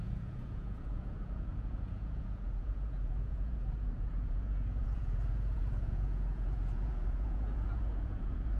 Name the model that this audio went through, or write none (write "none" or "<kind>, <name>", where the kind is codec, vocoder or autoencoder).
vocoder, Vocos